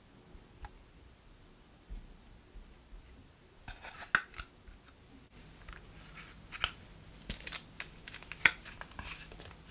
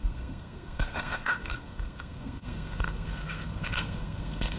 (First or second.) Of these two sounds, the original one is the first